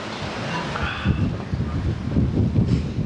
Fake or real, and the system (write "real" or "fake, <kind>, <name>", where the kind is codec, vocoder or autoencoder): real